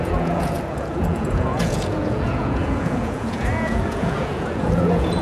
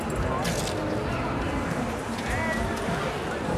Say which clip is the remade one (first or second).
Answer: first